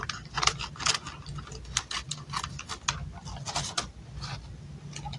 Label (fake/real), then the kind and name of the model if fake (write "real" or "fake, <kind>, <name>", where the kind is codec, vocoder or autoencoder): real